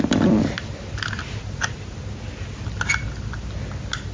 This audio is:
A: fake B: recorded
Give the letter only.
B